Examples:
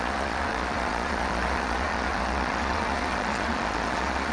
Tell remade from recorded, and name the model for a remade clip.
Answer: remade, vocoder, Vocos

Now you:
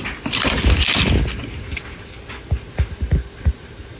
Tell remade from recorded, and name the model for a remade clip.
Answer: recorded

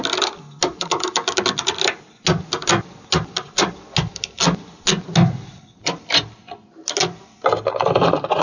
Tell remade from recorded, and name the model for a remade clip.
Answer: recorded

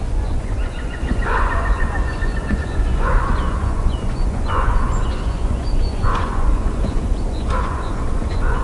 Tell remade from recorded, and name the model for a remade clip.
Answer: remade, vocoder, Vocos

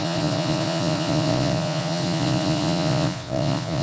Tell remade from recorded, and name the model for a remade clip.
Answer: remade, vocoder, Vocos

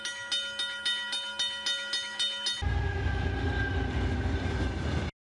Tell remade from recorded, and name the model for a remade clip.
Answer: recorded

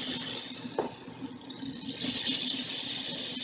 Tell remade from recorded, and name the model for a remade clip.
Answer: recorded